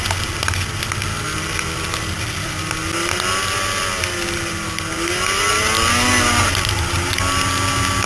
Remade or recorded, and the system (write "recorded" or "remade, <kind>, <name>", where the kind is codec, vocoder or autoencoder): recorded